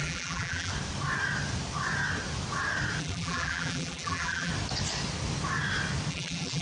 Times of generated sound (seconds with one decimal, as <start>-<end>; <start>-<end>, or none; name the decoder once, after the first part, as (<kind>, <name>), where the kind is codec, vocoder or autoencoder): 0.0-0.7 (vocoder, BigVGAN v2); 3.0-4.5; 6.1-6.6